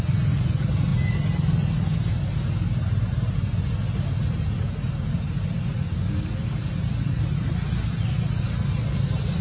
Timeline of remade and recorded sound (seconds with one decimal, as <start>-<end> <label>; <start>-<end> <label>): 0.0-9.4 recorded